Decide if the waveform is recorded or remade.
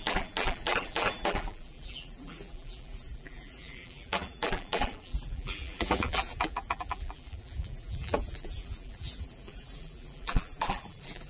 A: remade